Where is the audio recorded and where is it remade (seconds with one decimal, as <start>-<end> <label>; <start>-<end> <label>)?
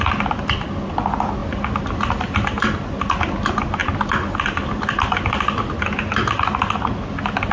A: 0.0-7.5 recorded